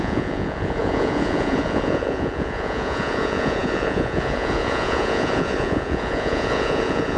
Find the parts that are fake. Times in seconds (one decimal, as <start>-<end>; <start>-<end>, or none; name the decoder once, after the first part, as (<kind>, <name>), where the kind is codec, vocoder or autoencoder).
0.0-7.2 (vocoder, Vocos)